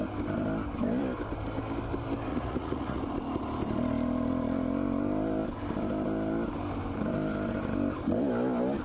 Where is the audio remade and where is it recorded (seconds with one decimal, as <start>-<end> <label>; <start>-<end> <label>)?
0.0-2.3 recorded; 2.3-3.0 remade; 3.0-8.8 recorded